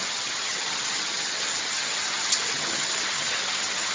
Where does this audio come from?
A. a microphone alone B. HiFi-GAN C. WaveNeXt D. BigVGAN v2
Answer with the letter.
B